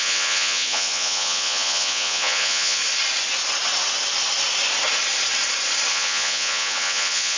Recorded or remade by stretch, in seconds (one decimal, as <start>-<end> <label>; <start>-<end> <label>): 0.0-2.8 remade; 2.8-5.9 recorded; 5.9-7.4 remade